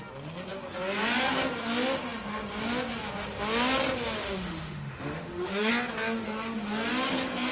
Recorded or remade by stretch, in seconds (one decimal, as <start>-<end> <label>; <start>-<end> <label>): 0.0-4.2 recorded; 4.2-5.7 remade; 5.7-7.5 recorded